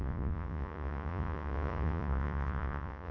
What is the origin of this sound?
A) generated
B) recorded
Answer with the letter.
A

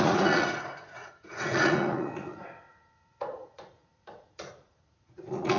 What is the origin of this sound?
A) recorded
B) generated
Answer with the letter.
B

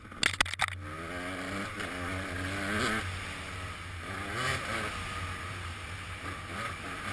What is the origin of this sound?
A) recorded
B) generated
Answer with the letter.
A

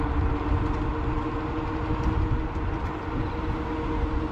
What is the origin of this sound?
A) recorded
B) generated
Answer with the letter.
A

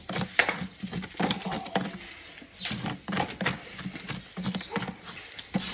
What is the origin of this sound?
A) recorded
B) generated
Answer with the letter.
A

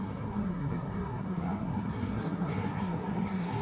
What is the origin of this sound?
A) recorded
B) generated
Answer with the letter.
B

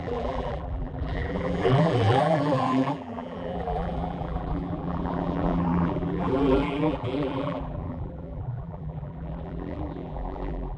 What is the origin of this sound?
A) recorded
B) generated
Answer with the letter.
B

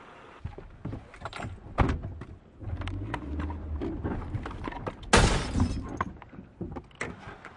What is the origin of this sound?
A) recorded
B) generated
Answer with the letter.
A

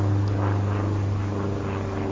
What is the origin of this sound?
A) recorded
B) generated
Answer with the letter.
A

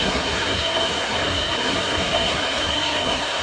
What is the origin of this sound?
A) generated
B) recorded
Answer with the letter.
A